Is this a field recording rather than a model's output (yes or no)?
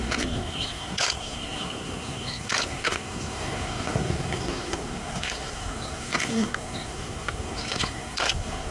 no